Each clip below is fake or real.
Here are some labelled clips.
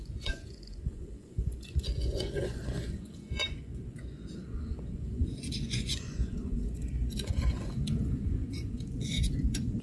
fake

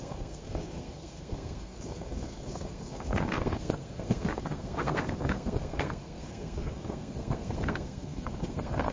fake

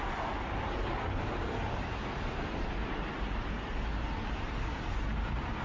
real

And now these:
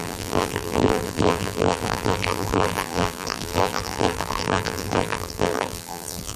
fake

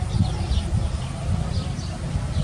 real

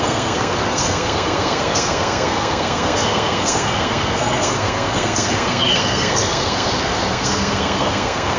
fake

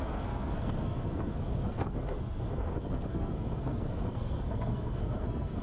fake